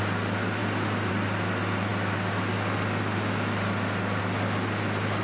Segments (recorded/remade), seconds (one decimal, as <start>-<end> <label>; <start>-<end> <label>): 0.0-5.2 recorded